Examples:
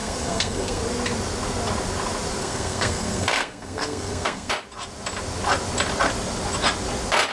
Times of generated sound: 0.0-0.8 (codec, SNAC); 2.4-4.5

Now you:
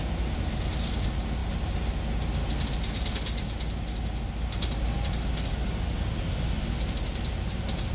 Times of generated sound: none

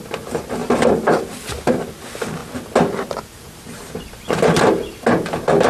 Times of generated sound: none

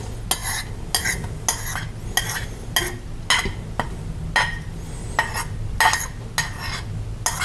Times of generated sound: none

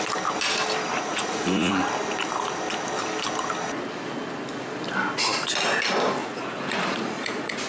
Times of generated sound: 0.9-1.7 (vocoder, Vocos); 6.2-7.7

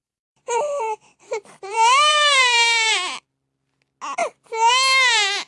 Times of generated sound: 0.0-3.3 (vocoder, BigVGAN v2)

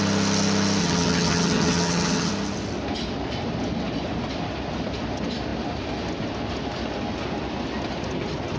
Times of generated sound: 0.8-2.3 (vocoder, HiFi-GAN)